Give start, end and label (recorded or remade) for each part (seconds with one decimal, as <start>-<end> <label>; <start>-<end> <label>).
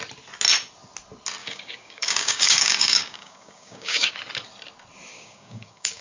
0.0-1.4 recorded; 1.4-4.1 remade; 4.1-5.1 recorded; 5.1-6.0 remade